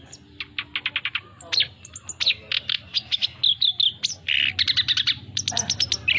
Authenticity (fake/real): real